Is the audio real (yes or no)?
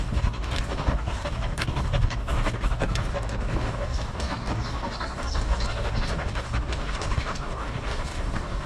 no